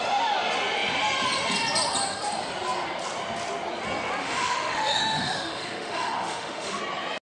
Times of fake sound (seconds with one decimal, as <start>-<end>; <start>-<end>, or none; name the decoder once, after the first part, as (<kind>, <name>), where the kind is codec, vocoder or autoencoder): 4.2-6.8 (autoencoder, DAC-VAE)